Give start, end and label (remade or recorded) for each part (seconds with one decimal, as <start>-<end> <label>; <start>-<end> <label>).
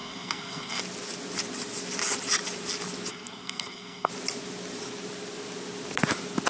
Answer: 0.0-0.8 remade; 0.8-3.1 recorded; 3.1-4.1 remade; 4.1-6.5 recorded